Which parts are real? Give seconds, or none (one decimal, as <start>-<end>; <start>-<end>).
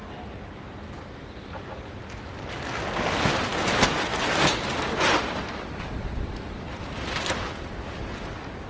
0.0-8.7